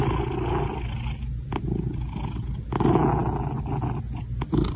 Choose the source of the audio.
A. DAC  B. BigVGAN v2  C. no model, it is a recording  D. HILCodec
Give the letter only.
C